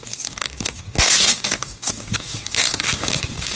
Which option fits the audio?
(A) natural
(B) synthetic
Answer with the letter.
B